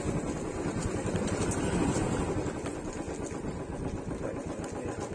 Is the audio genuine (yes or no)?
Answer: yes